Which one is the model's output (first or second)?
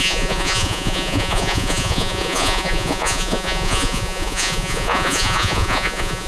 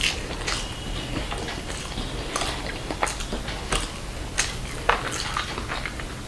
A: first